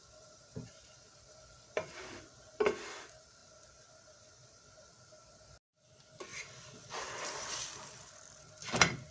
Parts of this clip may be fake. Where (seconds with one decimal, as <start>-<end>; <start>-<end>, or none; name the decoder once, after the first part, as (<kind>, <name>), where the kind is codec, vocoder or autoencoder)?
0.0-1.9 (vocoder, BigVGAN v2); 3.4-4.9; 6.3-8.4